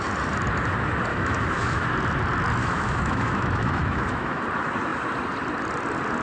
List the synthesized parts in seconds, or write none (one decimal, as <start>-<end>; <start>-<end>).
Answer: 1.1-1.8; 2.6-4.4